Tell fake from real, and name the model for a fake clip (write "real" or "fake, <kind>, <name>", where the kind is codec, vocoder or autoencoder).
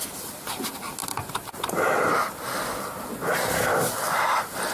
real